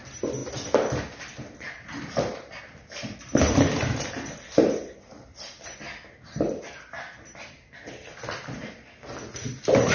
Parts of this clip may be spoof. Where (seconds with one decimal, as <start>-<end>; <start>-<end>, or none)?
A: none

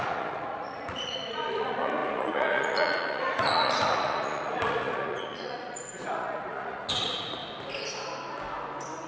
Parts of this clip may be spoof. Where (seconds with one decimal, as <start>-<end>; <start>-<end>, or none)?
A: 0.0-7.4

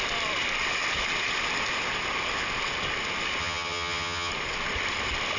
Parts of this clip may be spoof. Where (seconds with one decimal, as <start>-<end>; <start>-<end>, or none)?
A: 3.4-4.3

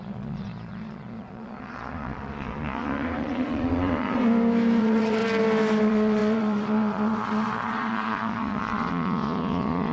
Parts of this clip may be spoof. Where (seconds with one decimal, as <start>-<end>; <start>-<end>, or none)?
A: 0.0-4.2; 4.8-5.2; 5.8-9.9